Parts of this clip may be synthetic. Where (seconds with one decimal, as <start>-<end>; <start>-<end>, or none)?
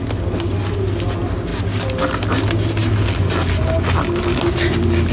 none